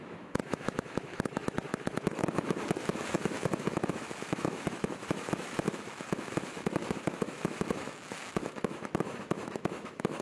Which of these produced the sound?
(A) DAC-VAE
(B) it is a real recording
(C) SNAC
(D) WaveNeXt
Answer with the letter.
A